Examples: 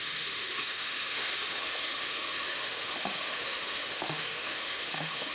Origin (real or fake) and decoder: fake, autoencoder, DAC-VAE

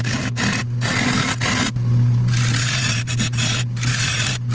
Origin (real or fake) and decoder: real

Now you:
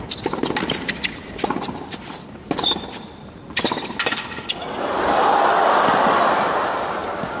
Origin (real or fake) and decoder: real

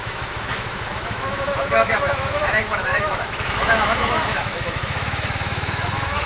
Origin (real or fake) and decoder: fake, autoencoder, DAC-VAE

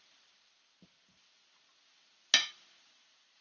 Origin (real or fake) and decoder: real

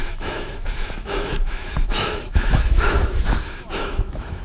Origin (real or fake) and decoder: fake, autoencoder, DAC-VAE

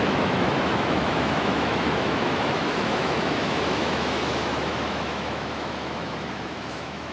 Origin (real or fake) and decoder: fake, autoencoder, DAC-VAE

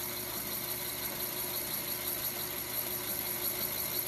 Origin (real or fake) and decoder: real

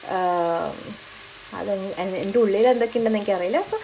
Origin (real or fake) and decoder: real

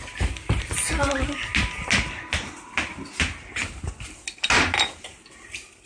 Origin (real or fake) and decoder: real